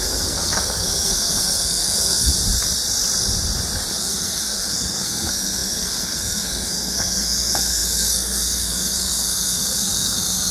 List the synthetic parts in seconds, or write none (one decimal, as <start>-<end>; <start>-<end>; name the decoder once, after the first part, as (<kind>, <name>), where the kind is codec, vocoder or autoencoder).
0.0-2.3 (codec, SNAC); 4.0-10.5